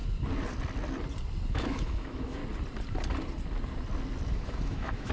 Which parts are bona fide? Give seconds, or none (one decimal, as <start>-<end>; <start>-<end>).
0.0-1.5; 2.4-4.3